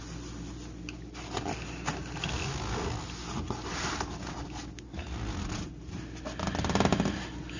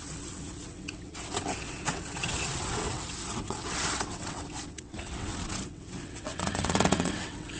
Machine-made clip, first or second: second